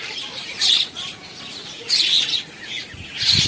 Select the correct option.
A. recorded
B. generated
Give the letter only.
B